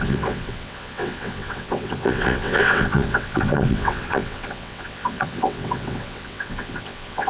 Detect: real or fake fake